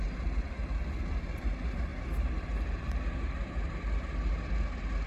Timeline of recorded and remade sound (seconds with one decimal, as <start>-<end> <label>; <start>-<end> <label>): 0.0-1.9 remade; 1.9-5.1 recorded